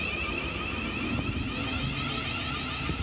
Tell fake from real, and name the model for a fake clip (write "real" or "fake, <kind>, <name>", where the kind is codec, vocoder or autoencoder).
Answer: real